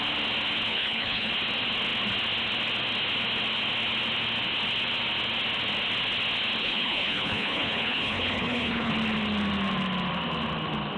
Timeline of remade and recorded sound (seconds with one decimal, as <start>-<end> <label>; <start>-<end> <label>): 0.0-0.7 recorded; 0.7-1.3 remade; 1.3-6.6 recorded; 6.6-8.9 remade; 8.9-11.0 recorded